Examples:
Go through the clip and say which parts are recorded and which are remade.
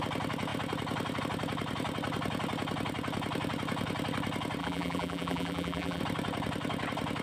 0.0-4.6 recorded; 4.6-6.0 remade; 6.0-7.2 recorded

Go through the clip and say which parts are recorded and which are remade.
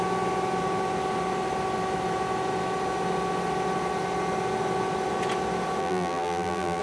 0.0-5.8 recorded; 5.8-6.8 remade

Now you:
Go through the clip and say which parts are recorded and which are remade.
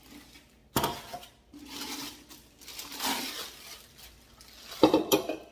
0.0-5.5 recorded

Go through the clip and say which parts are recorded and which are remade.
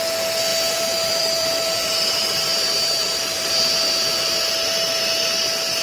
0.0-0.5 recorded; 0.5-3.5 remade; 3.5-5.8 recorded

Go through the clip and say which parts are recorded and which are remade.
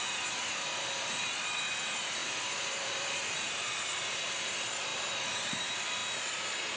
0.0-6.0 remade; 6.0-6.8 recorded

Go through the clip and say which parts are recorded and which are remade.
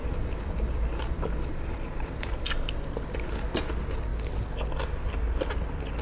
0.0-3.6 remade; 3.6-6.0 recorded